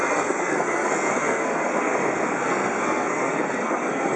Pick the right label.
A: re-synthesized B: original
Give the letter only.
A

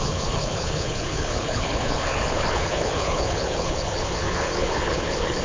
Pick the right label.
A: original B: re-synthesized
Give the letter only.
B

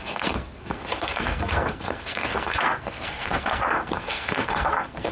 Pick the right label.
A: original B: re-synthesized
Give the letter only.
B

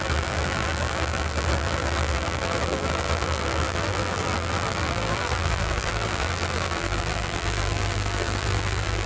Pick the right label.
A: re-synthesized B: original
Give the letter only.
A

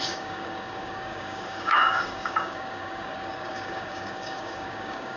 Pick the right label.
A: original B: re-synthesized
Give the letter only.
B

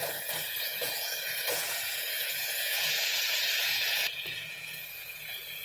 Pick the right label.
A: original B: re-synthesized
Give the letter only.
B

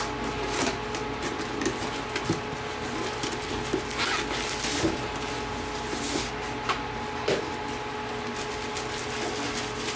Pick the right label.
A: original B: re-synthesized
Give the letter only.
A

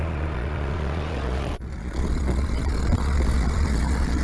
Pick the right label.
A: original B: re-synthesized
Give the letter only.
B